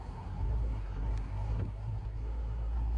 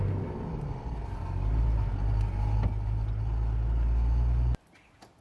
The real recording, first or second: second